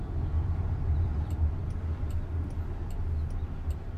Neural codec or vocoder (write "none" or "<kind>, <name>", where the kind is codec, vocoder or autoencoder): none